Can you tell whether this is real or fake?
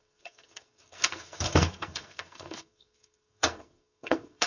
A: fake